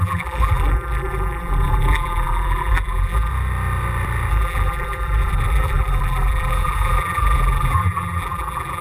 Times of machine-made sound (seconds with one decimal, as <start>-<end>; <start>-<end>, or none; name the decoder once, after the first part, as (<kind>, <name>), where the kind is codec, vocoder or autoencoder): 0.0-3.3 (vocoder, BigVGAN v2); 4.3-8.8